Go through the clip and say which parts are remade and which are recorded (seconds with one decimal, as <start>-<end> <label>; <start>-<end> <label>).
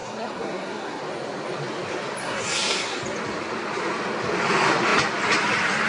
0.0-1.0 remade; 1.0-2.2 recorded; 2.2-3.0 remade; 3.0-5.9 recorded